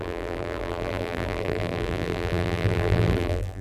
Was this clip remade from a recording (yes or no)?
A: yes